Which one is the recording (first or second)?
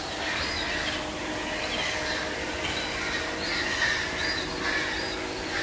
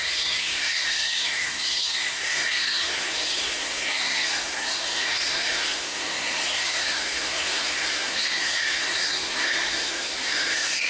first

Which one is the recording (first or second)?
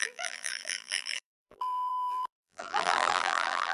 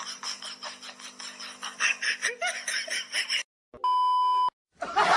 second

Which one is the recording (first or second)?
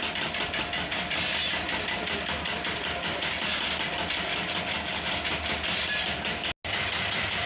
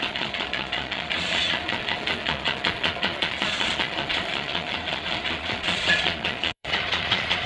first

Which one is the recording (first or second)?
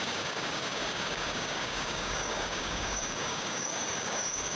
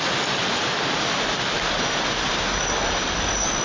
second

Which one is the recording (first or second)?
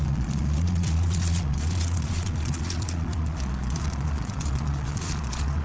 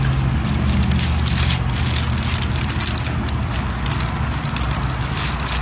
second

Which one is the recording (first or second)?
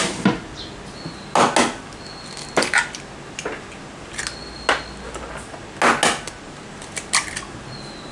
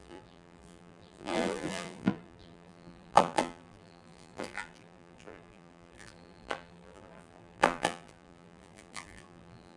first